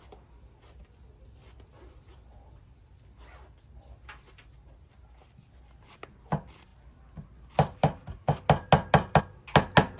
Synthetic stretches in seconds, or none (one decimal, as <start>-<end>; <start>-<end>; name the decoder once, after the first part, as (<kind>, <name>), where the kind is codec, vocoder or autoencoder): none